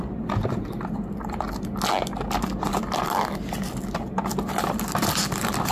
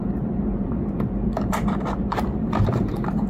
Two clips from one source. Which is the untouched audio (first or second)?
first